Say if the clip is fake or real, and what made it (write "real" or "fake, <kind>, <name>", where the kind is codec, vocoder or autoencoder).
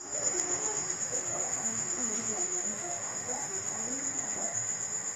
fake, autoencoder, DAC-VAE